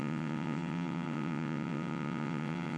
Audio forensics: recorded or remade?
remade